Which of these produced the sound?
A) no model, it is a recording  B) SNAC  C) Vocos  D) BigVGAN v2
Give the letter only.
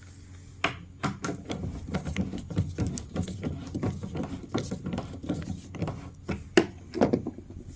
A